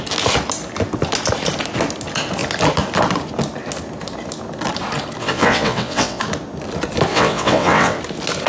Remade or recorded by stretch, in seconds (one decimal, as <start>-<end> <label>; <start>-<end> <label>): 0.0-5.2 recorded; 5.2-6.2 remade; 6.2-7.1 recorded; 7.1-8.0 remade; 8.0-8.5 recorded